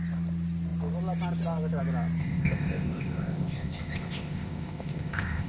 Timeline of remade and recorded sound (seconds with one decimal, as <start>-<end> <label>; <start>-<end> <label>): 0.0-2.2 recorded; 2.2-5.5 remade